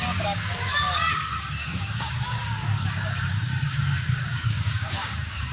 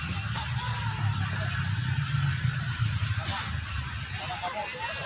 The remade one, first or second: first